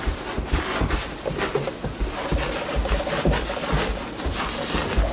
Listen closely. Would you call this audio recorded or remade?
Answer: recorded